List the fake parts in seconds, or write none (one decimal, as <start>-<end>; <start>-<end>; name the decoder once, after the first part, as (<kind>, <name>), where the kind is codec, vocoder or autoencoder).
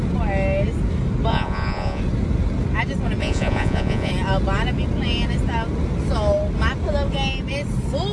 1.3-2.0 (vocoder, Vocos); 3.2-4.1